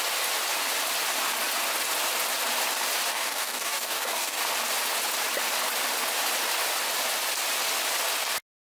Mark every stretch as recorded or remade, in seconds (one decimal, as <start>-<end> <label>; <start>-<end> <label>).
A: 0.0-3.1 recorded; 3.1-4.4 remade; 4.4-8.6 recorded